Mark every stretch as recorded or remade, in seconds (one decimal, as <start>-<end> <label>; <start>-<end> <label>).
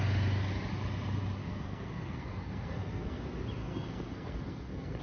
0.0-1.4 recorded; 1.4-3.2 remade; 3.2-3.6 recorded; 3.6-5.0 remade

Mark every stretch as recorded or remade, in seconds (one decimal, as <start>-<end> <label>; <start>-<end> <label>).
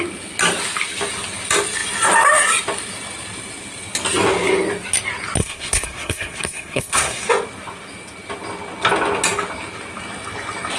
0.0-5.4 recorded; 5.4-7.3 remade; 7.3-10.8 recorded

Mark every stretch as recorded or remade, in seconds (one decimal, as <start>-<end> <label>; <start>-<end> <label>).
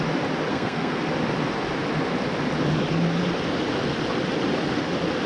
0.0-0.5 recorded; 0.5-1.0 remade; 1.0-5.3 recorded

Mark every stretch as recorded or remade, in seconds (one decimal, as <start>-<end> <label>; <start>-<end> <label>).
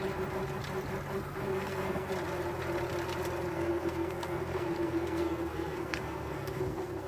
0.0-1.5 recorded; 1.5-2.1 remade; 2.1-3.5 recorded; 3.5-7.1 remade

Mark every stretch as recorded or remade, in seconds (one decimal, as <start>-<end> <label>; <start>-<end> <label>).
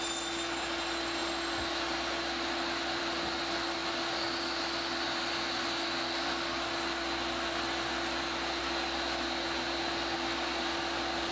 0.0-11.3 recorded